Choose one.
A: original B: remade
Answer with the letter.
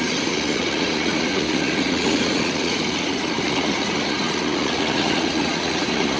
B